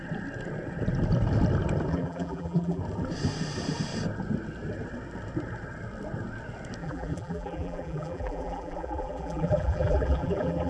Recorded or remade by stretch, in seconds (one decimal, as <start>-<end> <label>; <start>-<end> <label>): 0.0-1.9 recorded; 1.9-2.8 remade; 2.8-6.8 recorded; 6.8-10.7 remade